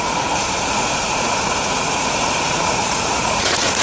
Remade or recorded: remade